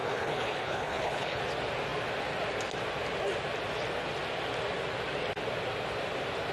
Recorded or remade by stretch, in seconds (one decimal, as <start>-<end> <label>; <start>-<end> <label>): 0.0-1.4 remade; 1.4-6.5 recorded